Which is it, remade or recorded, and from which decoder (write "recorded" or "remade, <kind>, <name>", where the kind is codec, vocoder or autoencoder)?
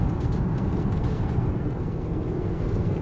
remade, codec, SNAC